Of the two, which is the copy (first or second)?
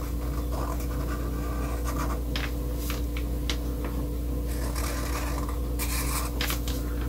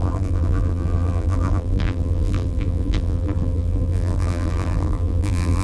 second